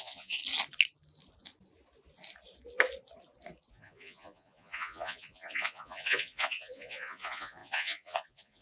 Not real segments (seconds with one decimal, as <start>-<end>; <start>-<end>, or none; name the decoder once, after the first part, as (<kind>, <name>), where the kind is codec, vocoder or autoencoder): 0.0-0.4 (vocoder, Vocos); 3.7-8.6